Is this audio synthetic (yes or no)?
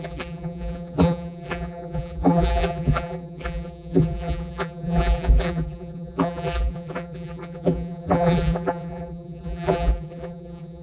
yes